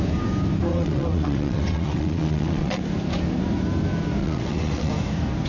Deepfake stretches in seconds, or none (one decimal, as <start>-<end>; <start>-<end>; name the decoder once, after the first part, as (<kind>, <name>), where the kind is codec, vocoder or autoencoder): 0.7-2.8 (vocoder, WaveNeXt); 4.2-4.9